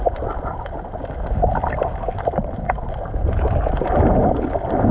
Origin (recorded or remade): recorded